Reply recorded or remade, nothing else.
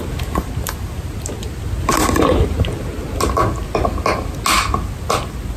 recorded